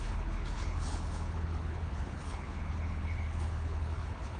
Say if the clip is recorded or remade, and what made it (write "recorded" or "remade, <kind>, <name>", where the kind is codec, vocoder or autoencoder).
remade, codec, HILCodec